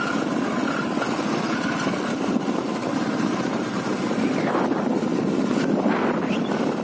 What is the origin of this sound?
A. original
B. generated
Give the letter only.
A